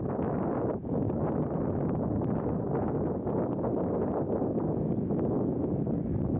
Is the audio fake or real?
real